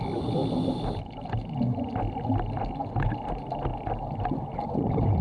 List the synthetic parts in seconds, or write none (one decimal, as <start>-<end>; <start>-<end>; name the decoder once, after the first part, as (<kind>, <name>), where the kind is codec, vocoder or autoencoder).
none